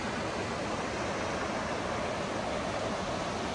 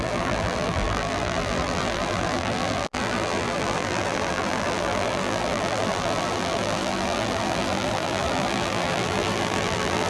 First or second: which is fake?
second